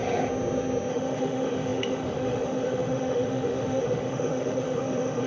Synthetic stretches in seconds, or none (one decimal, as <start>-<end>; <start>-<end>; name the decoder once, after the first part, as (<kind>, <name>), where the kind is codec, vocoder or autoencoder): 0.9-5.3 (autoencoder, DAC-VAE)